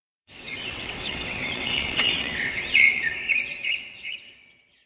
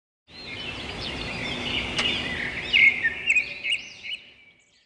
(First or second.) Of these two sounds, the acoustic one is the second